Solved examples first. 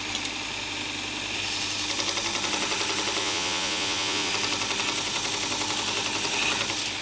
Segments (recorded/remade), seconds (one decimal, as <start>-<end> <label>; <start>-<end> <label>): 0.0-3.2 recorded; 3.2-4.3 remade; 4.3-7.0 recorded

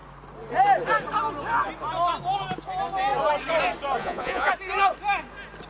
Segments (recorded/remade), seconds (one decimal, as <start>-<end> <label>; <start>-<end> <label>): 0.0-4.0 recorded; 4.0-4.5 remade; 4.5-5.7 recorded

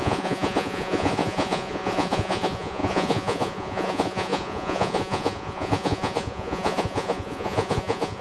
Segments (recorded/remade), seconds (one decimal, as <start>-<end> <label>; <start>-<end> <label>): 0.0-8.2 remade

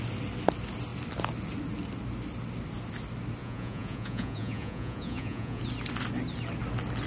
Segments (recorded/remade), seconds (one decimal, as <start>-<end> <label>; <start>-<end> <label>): 0.0-3.4 recorded; 3.4-5.6 remade; 5.6-7.1 recorded